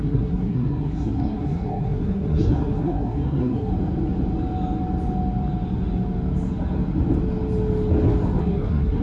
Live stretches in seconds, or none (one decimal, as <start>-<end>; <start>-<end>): 3.7-8.4